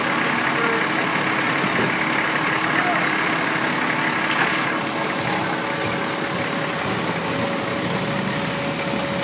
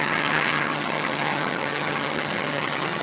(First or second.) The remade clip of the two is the second